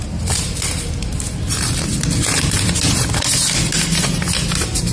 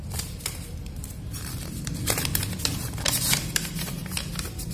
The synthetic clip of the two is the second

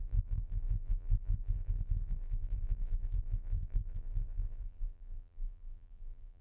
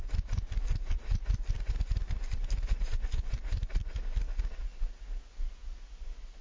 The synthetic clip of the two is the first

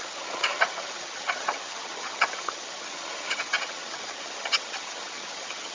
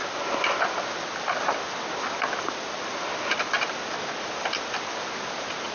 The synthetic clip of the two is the first